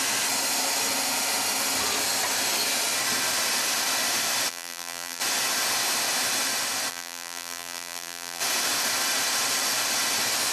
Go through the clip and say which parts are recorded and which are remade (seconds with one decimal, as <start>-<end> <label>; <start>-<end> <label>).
0.0-4.5 recorded; 4.5-5.2 remade; 5.2-6.9 recorded; 6.9-8.4 remade; 8.4-10.5 recorded